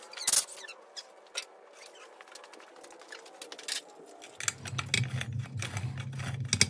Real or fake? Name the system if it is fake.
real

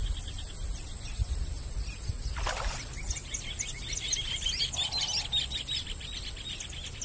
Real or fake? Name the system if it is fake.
real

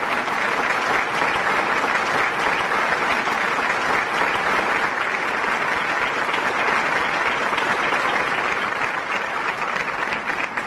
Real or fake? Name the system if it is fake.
real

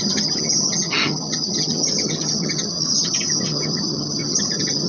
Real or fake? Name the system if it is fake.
fake, vocoder, HiFi-GAN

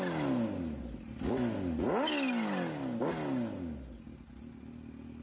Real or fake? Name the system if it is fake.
real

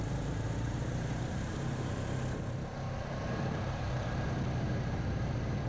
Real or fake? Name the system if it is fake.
fake, vocoder, BigVGAN v2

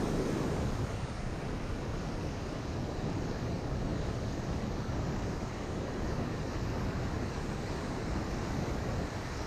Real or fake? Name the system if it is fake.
fake, codec, DAC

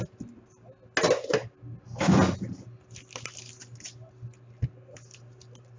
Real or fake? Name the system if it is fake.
real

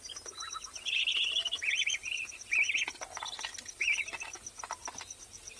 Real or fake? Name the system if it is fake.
real